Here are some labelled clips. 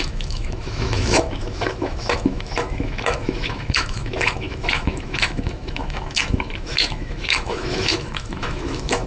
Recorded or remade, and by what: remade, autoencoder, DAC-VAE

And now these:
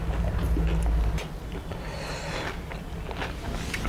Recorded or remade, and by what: recorded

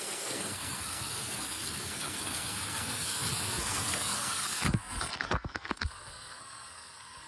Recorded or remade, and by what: remade, codec, SNAC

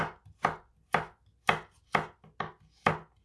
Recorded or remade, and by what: recorded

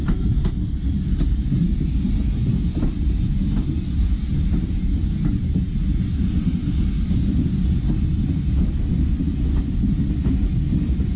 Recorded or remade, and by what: recorded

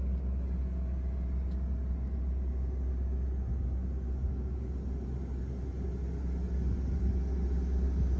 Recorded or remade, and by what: recorded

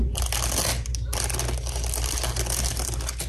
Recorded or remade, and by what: recorded